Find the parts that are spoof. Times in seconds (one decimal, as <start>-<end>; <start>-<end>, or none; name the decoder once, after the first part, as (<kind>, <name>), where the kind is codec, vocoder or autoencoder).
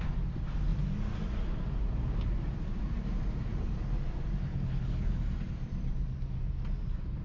4.5-5.2 (codec, HILCodec)